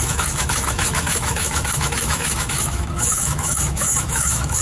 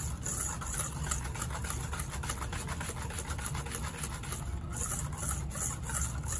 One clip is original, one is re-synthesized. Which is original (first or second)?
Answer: second